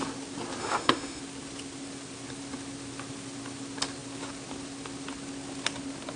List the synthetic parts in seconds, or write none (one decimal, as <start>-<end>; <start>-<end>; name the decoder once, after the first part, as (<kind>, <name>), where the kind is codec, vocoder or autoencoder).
0.6-1.2 (autoencoder, DAC-VAE)